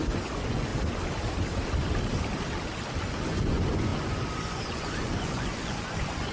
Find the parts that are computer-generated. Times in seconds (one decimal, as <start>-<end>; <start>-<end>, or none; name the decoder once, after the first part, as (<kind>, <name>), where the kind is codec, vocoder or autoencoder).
0.0-0.7 (vocoder, Vocos); 3.1-6.3